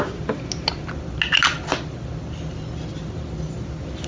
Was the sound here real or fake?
real